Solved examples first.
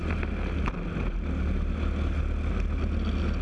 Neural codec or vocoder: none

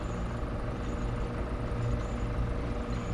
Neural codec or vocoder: none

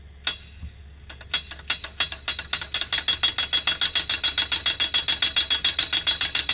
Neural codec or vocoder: none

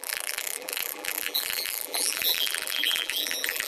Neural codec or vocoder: vocoder, BigVGAN v2